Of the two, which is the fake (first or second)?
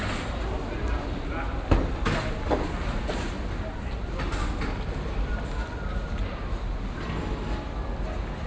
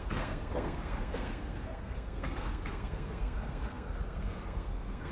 second